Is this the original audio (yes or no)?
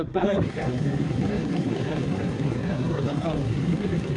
no